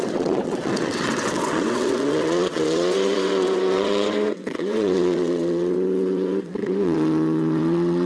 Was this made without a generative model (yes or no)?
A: no